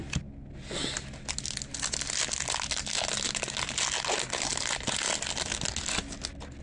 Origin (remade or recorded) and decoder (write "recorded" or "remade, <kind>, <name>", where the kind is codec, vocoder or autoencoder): recorded